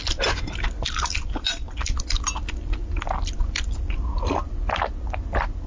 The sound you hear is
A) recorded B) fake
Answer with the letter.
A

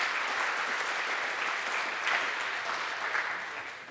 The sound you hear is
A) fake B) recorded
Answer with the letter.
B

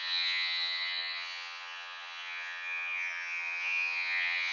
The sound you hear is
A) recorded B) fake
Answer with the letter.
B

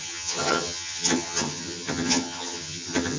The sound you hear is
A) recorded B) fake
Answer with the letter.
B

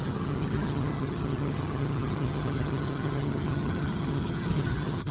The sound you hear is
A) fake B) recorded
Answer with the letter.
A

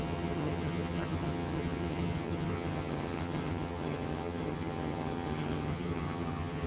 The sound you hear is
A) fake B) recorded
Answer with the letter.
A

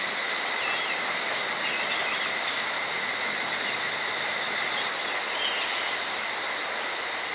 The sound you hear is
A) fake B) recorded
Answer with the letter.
B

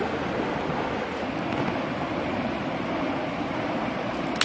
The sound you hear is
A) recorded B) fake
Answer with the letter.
A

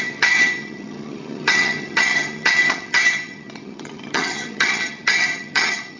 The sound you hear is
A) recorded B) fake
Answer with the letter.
B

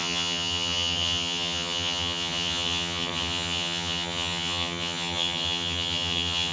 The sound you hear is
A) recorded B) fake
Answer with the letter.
B